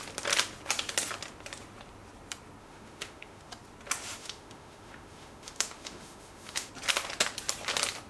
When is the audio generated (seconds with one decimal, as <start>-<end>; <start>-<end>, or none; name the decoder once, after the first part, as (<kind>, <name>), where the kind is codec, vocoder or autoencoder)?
2.6-3.5 (autoencoder, DAC-VAE); 4.2-6.7